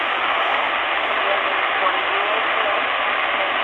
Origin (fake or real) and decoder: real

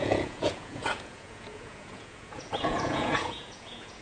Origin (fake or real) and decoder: fake, vocoder, Vocos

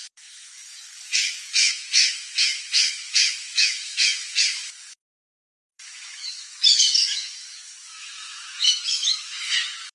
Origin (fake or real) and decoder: fake, autoencoder, DAC-VAE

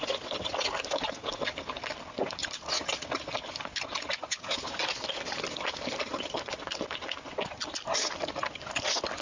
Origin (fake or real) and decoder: real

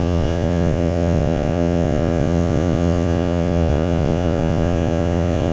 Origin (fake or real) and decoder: fake, vocoder, Vocos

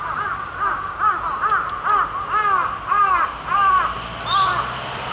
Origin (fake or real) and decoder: real